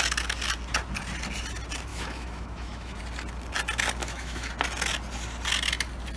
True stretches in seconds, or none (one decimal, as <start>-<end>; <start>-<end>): 0.0-1.9; 3.0-4.0; 4.5-6.2